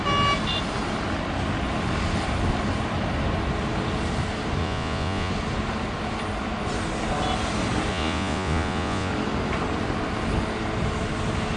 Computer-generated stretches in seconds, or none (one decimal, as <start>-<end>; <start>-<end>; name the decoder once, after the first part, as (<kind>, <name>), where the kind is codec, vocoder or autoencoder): 4.6-5.3 (vocoder, Vocos); 7.9-9.1